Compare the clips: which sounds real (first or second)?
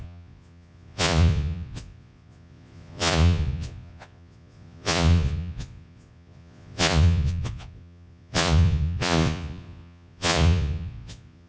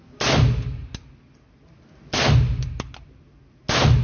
second